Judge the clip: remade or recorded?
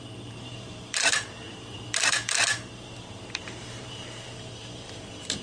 remade